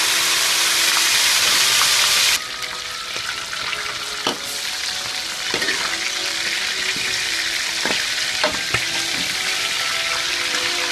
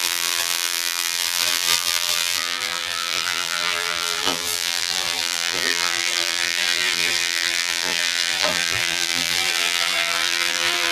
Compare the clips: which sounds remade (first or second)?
second